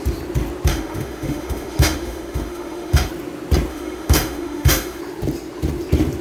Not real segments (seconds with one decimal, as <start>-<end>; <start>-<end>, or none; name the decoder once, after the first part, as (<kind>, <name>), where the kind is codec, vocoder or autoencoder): 0.7-3.1 (autoencoder, DAC-VAE); 3.7-5.0